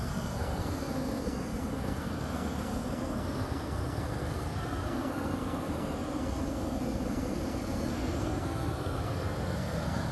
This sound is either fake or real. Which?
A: fake